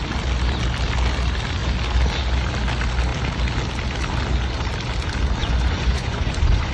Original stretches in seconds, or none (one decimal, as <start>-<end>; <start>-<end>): 0.0-5.4